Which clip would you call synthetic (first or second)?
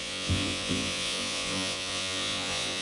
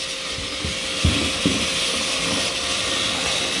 first